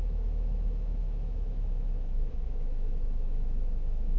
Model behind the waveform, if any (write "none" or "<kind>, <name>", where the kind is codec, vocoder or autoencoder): autoencoder, DAC-VAE